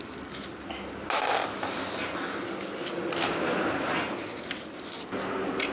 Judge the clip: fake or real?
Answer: real